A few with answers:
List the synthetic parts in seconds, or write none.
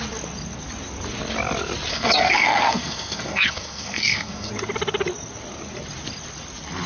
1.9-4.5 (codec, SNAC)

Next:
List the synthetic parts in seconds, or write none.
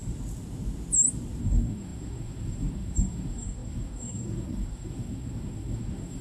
1.4-6.2 (codec, SNAC)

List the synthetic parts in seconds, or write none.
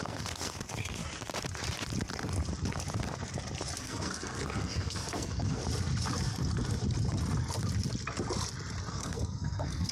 0.0-1.0 (codec, SNAC); 3.8-5.6; 8.9-9.9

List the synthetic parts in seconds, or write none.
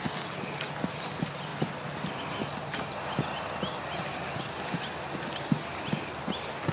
none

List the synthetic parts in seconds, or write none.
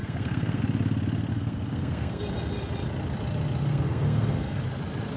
0.0-0.6 (codec, SNAC); 1.3-2.2; 3.7-4.6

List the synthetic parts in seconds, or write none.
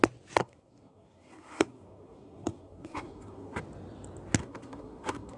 0.4-3.6 (codec, SNAC); 4.4-5.4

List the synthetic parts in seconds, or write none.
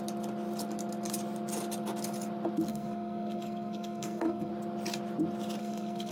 2.7-4.5 (codec, SNAC); 5.6-6.1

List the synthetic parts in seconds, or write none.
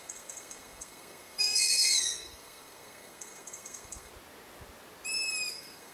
0.0-4.1 (codec, SNAC); 5.5-5.9